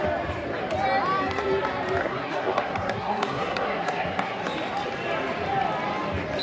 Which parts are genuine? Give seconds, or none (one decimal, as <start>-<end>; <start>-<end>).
0.0-2.0; 4.4-6.4